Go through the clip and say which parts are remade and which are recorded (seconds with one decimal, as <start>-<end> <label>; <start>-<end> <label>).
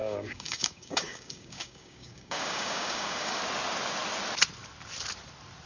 0.0-3.4 remade; 3.4-5.7 recorded